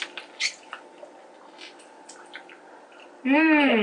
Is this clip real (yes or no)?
yes